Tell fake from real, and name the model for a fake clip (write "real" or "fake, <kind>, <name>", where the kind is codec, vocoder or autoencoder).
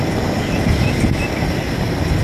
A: real